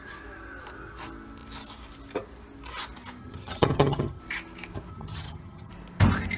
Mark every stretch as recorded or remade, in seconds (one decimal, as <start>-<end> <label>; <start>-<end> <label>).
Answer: 0.0-3.2 recorded; 3.2-4.2 remade; 4.2-4.9 recorded; 4.9-5.7 remade; 5.7-6.4 recorded